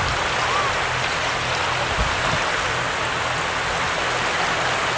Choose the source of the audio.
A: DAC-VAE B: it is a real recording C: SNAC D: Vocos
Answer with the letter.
B